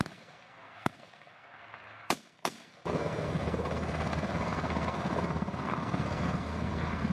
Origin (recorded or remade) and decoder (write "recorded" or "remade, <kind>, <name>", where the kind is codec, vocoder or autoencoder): remade, codec, SNAC